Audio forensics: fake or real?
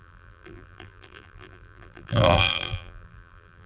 fake